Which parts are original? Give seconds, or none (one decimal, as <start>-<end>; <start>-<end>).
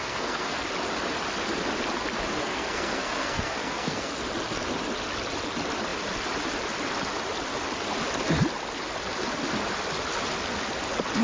0.6-2.4; 4.2-11.2